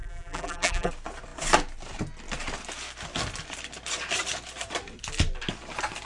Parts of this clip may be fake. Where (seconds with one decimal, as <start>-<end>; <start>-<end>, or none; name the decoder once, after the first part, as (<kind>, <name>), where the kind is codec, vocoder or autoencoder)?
0.0-0.9 (vocoder, BigVGAN v2)